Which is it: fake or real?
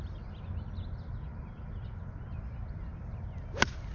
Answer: real